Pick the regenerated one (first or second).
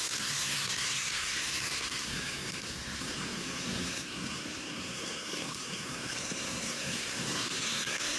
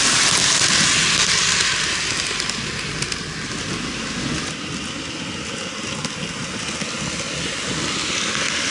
first